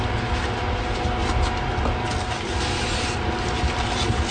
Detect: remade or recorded recorded